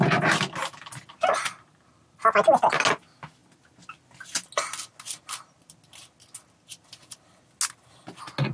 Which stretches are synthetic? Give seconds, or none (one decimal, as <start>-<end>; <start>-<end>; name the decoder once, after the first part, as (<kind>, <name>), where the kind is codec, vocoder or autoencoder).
none